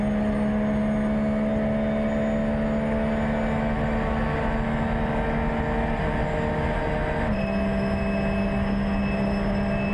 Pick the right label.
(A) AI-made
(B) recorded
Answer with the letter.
B